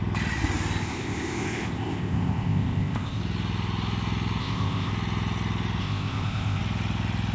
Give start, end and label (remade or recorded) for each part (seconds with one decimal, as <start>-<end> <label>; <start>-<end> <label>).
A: 0.0-0.8 recorded; 0.8-3.2 remade; 3.2-4.4 recorded; 4.4-4.9 remade; 4.9-5.8 recorded; 5.8-6.6 remade; 6.6-7.3 recorded